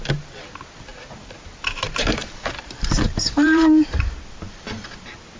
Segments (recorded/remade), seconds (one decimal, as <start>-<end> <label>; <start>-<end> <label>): 0.0-0.9 recorded; 0.9-4.1 remade; 4.1-5.4 recorded